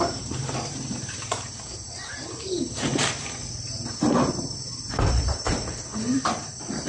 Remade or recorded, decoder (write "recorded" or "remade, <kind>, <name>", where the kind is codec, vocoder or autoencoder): remade, vocoder, BigVGAN v2